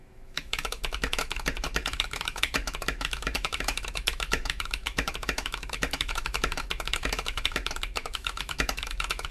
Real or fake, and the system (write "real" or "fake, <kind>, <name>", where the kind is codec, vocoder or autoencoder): fake, autoencoder, DAC-VAE